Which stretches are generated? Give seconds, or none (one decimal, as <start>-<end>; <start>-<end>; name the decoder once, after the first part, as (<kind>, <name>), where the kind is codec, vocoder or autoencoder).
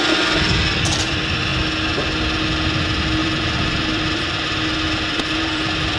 0.0-1.5 (vocoder, BigVGAN v2); 2.8-6.0